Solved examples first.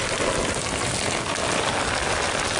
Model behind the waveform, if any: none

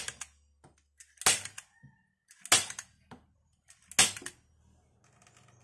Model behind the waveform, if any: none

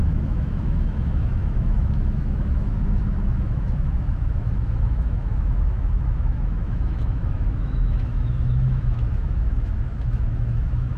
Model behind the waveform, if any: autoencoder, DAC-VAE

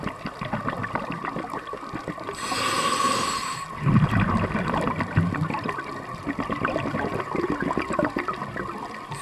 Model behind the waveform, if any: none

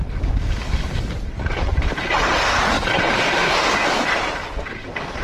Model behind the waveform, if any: none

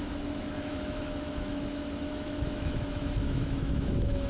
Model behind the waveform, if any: autoencoder, DAC-VAE